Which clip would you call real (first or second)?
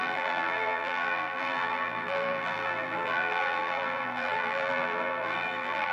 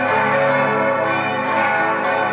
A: second